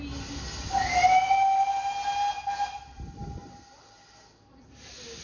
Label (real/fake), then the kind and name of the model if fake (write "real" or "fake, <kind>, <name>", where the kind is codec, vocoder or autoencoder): real